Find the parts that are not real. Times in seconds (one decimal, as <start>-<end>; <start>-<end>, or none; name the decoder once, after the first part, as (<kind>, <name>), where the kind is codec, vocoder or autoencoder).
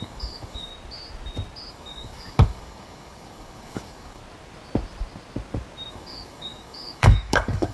0.0-0.7 (codec, DAC); 1.7-4.2; 5.9-7.7